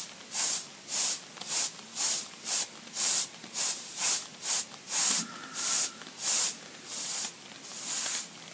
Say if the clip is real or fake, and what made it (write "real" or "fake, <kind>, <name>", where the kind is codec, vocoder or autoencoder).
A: real